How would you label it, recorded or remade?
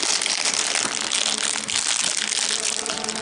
recorded